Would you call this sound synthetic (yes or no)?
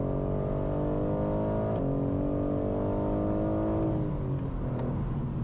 no